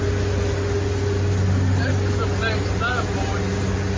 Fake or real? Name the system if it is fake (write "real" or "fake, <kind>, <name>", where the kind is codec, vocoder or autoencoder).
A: real